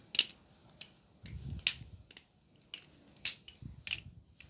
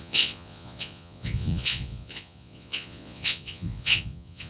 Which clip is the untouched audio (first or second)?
first